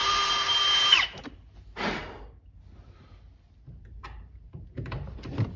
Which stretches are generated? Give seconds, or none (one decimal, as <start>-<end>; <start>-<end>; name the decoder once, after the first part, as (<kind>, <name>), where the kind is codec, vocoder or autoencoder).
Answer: 0.0-2.0 (vocoder, BigVGAN v2); 4.3-5.6